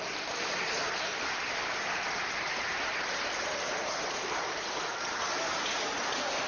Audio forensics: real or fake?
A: real